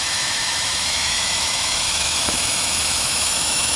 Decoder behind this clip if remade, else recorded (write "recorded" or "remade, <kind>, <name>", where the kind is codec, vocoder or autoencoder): remade, autoencoder, DAC-VAE